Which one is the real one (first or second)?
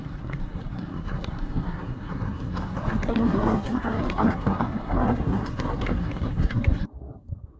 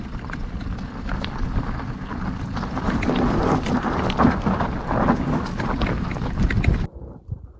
second